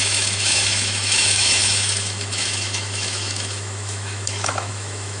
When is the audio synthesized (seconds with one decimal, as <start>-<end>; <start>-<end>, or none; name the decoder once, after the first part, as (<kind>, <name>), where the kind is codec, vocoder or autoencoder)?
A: 0.0-5.2 (autoencoder, DAC-VAE)